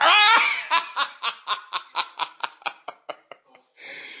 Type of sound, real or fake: real